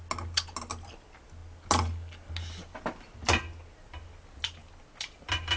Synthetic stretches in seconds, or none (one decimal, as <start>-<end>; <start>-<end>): none